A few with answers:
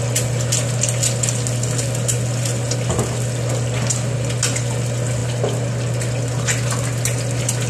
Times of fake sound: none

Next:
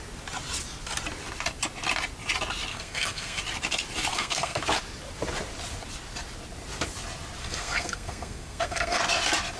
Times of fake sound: 2.7-3.4 (codec, SNAC); 4.1-4.6; 7.4-9.0

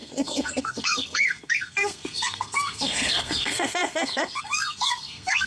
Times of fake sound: 0.0-5.5 (codec, SNAC)

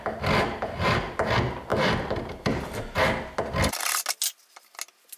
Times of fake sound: none

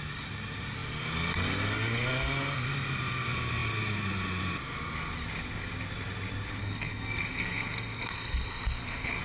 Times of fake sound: 6.6-9.2 (codec, SNAC)

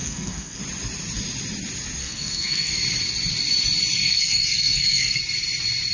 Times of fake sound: 0.0-0.6 (codec, SNAC); 2.0-2.7; 4.0-5.2

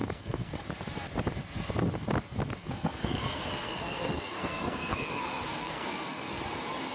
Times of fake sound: 0.0-0.6 (codec, SNAC); 2.6-6.4